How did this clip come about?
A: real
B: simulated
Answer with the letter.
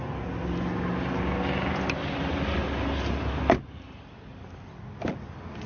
A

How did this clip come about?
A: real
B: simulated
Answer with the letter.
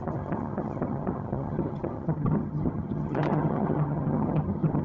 B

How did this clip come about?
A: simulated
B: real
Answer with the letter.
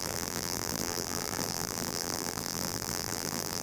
A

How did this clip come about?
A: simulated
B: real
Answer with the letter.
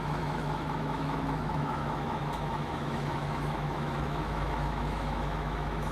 A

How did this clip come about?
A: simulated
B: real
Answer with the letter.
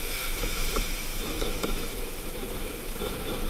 A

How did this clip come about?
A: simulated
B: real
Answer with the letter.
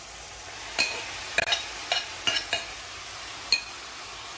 B